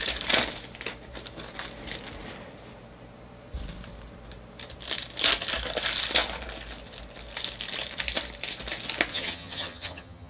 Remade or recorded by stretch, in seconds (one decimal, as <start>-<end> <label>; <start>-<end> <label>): 0.0-9.1 recorded; 9.1-10.3 remade